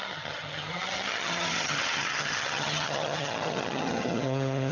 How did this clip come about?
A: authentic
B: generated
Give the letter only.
B